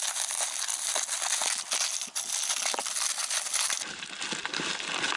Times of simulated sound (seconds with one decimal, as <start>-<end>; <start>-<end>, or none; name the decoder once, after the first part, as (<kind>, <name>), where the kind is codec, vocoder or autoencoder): none